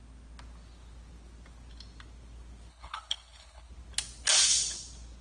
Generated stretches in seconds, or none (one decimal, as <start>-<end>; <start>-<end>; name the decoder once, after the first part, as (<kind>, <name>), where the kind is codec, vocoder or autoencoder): 2.7-3.7 (codec, HILCodec)